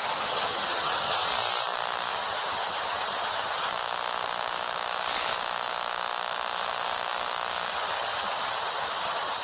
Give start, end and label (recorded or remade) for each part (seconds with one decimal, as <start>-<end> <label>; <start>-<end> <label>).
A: 0.0-1.3 remade; 1.3-2.1 recorded; 2.1-3.7 remade; 3.7-7.7 recorded; 7.7-9.4 remade